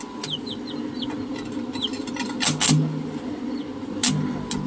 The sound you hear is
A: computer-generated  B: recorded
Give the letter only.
B